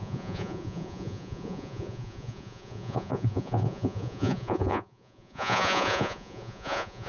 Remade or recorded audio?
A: remade